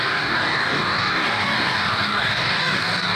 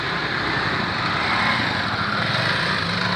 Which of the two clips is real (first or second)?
second